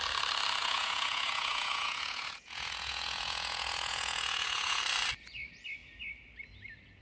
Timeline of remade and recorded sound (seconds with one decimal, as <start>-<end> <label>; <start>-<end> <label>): 0.0-0.6 recorded; 0.6-4.8 remade; 4.8-7.0 recorded